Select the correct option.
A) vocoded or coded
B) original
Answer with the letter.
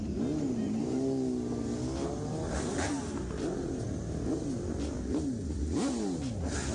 B